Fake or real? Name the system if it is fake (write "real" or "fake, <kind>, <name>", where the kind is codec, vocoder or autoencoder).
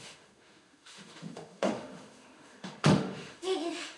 fake, autoencoder, DAC-VAE